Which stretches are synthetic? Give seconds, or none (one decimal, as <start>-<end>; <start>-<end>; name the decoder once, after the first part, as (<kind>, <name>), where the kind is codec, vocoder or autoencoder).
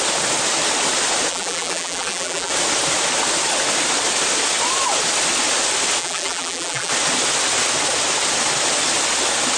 1.3-2.5 (vocoder, BigVGAN v2); 6.0-6.9